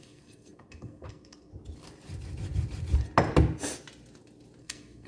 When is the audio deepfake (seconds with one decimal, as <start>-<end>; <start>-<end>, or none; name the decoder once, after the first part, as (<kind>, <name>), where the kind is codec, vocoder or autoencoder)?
0.0-1.5 (codec, SNAC); 4.6-5.1